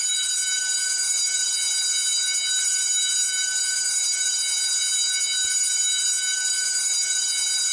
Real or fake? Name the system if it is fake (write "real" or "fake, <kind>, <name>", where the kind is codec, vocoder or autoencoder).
real